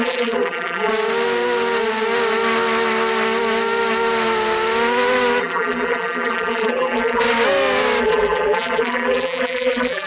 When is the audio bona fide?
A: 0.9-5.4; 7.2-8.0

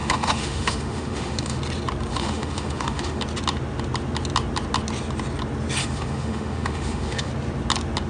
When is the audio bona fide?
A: 1.6-2.1; 3.2-5.8; 7.3-8.1

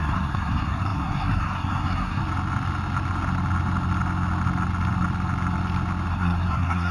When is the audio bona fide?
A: 2.2-6.1

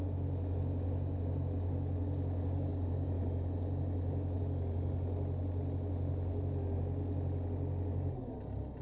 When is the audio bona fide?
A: 0.0-8.8

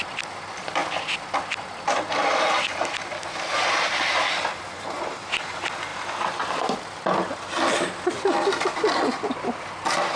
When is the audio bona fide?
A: 0.0-10.2

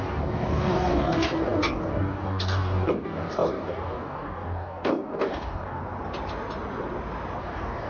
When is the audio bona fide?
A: 5.8-7.4

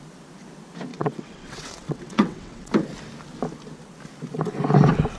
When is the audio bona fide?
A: 0.0-0.9; 2.7-5.2